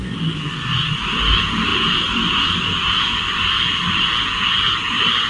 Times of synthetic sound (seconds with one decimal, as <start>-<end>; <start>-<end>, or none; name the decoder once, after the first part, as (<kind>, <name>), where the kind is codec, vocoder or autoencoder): 1.7-4.1 (vocoder, BigVGAN v2)